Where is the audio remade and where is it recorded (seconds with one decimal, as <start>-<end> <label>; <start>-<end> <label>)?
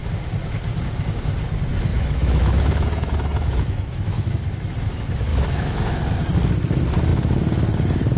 0.0-1.9 recorded; 1.9-4.4 remade; 4.4-5.3 recorded; 5.3-5.9 remade; 5.9-8.2 recorded